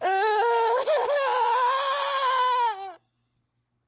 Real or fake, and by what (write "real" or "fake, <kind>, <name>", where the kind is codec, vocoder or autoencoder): real